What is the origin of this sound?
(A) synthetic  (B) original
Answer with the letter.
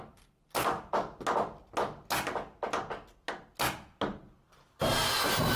B